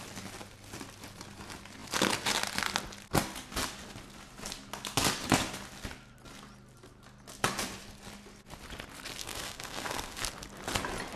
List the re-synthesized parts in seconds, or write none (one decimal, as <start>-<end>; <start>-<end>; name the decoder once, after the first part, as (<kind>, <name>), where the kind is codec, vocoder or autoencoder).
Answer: 9.2-10.2 (codec, SNAC)